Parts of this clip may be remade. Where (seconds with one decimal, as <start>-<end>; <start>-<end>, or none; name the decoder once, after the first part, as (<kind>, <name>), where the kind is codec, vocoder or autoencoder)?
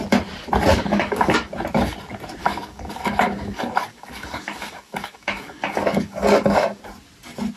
0.7-1.5 (codec, DAC); 2.4-6.8